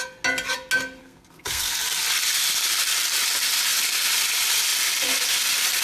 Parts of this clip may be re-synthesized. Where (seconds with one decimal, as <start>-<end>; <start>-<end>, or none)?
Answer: 1.0-1.8